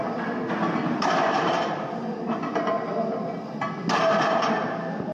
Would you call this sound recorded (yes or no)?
yes